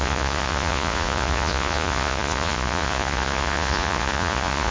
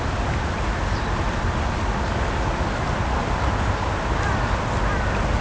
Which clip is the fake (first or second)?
first